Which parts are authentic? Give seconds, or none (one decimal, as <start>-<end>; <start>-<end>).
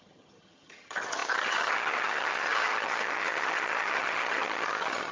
none